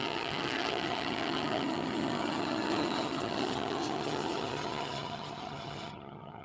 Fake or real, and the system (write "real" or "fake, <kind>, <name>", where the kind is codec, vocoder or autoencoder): fake, vocoder, HiFi-GAN